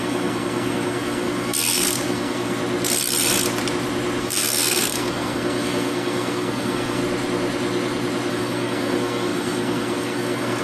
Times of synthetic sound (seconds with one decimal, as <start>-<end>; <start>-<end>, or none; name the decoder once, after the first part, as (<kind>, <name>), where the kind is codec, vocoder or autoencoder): 0.0-2.6 (codec, SNAC); 4.2-7.0; 8.3-10.6